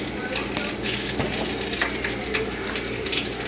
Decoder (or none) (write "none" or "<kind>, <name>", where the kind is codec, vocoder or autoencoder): none